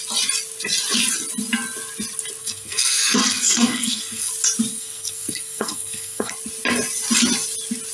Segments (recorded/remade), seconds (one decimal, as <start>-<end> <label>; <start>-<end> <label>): 0.0-2.4 recorded; 2.4-4.3 remade; 4.3-4.7 recorded; 4.7-6.3 remade; 6.3-7.9 recorded